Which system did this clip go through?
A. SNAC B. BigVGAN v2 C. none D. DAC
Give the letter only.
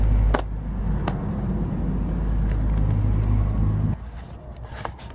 C